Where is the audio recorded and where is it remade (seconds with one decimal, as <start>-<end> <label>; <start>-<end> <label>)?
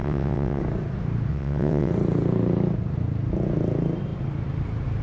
0.0-0.6 remade; 0.6-1.3 recorded; 1.3-1.9 remade; 1.9-5.0 recorded